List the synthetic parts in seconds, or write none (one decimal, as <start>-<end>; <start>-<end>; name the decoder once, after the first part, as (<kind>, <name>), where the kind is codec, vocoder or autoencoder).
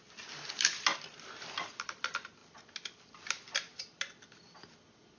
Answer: none